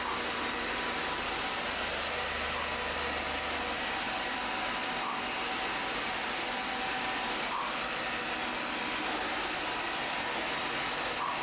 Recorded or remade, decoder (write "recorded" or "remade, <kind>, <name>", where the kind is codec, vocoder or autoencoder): recorded